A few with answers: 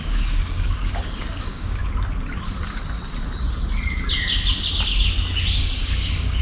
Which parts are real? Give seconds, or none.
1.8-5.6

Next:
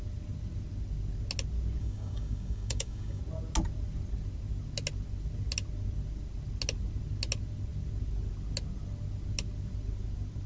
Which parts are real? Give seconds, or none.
0.0-1.8; 3.2-10.5

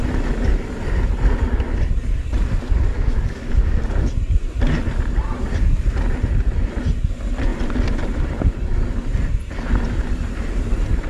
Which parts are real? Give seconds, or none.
0.0-2.9; 3.8-11.1